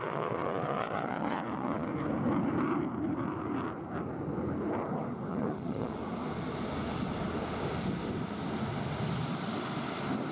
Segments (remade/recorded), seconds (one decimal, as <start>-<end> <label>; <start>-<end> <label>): 0.0-1.9 remade; 1.9-5.3 recorded; 5.3-6.0 remade; 6.0-10.3 recorded